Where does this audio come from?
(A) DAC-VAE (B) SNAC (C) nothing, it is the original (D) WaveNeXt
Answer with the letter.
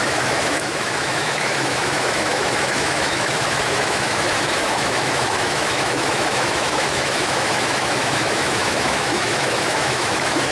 A